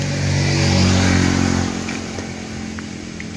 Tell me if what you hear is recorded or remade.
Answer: recorded